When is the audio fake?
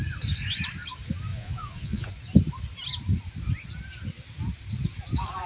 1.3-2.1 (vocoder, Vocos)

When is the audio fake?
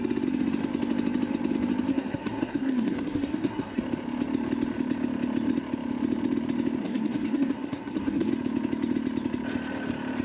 1.9-3.8 (codec, SNAC); 6.8-8.3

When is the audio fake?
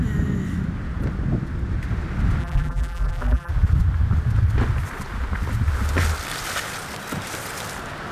2.4-3.5 (vocoder, BigVGAN v2)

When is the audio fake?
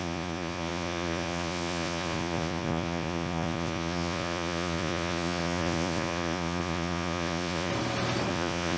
0.0-7.7 (vocoder, Vocos); 8.3-8.8